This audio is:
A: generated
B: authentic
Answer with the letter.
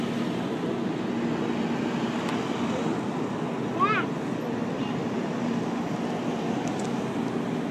B